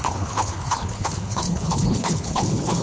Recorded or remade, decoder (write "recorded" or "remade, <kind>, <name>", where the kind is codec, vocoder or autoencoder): remade, codec, HILCodec